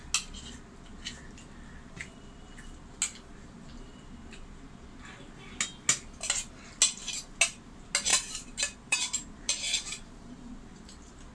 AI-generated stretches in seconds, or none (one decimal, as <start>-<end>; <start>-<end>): 8.1-11.3